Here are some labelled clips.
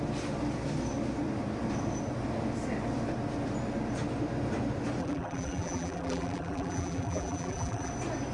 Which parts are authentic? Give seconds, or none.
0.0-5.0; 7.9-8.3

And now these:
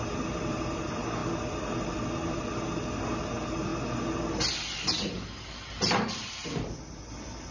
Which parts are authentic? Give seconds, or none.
0.0-7.5